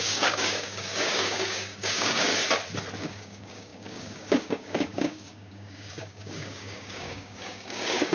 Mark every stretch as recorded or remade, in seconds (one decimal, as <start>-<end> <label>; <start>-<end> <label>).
0.0-2.3 remade; 2.3-3.0 recorded; 3.0-8.1 remade

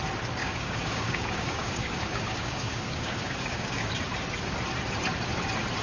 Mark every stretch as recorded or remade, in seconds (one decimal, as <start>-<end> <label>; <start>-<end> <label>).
0.0-0.4 recorded; 0.4-3.9 remade; 3.9-5.8 recorded

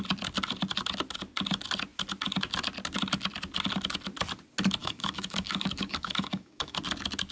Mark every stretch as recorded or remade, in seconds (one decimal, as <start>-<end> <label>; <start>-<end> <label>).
0.0-4.8 recorded; 4.8-6.8 remade; 6.8-7.3 recorded

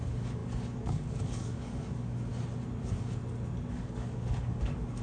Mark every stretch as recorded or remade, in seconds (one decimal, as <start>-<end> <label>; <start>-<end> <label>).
0.0-2.3 remade; 2.3-2.8 recorded; 2.8-3.2 remade; 3.2-3.7 recorded; 3.7-5.0 remade